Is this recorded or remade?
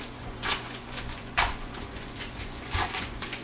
remade